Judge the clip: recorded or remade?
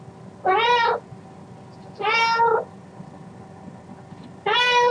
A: recorded